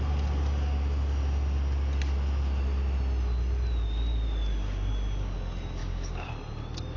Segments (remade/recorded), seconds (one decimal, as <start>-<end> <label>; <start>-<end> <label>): 0.0-5.8 recorded; 5.8-6.3 remade; 6.3-7.0 recorded

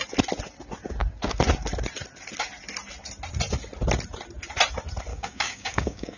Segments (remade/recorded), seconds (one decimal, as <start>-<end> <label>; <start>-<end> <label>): 0.0-5.1 recorded; 5.1-6.2 remade